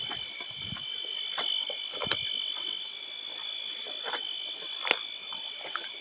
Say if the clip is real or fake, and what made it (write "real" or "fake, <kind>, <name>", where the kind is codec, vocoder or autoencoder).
real